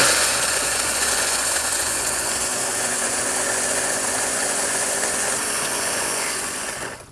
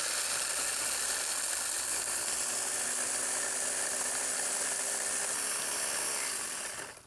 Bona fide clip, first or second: second